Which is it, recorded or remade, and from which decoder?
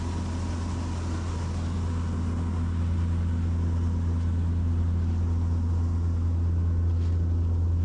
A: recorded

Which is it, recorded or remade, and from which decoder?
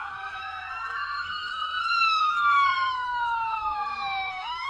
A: remade, codec, SNAC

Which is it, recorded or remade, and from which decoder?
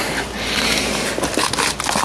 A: recorded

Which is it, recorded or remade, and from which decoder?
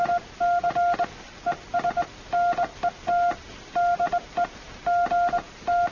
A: recorded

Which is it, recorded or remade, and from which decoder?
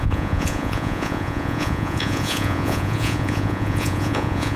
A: remade, vocoder, Vocos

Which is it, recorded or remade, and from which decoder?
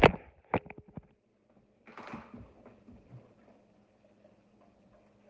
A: recorded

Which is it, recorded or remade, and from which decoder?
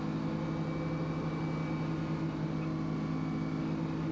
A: recorded